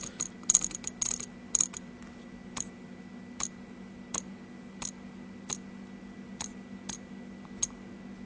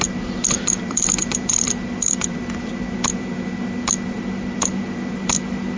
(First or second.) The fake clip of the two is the second